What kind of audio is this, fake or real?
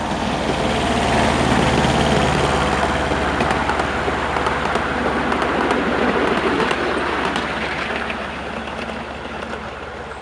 real